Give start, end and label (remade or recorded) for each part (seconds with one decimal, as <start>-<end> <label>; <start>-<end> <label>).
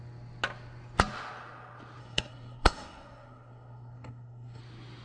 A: 0.0-2.0 recorded; 2.0-4.6 remade; 4.6-5.0 recorded